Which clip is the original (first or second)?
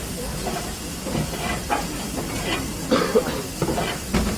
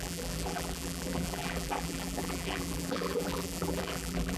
first